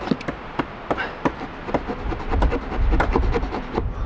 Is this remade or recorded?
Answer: recorded